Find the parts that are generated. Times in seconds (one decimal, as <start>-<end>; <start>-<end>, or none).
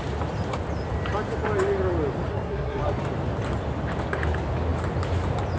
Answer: 2.3-2.8